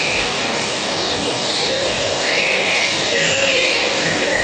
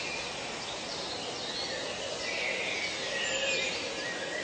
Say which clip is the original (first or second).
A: second